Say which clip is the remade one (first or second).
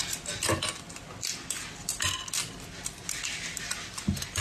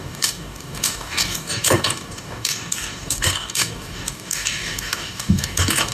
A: second